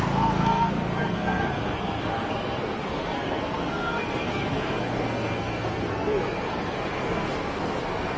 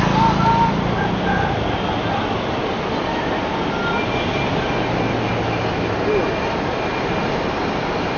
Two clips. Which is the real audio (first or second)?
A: second